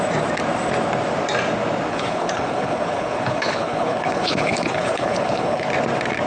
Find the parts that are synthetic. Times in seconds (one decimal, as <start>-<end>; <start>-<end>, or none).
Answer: 1.9-5.7